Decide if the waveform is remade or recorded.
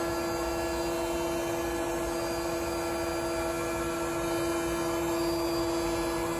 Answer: recorded